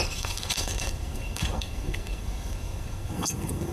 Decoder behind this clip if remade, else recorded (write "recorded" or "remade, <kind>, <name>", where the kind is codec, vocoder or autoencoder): remade, codec, SNAC